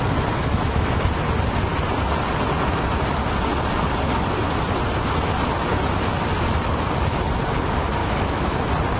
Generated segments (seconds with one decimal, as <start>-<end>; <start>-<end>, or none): 0.4-1.0; 8.0-8.6